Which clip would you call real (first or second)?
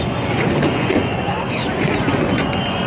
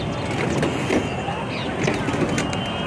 second